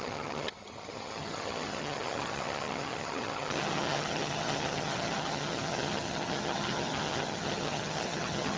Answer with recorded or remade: remade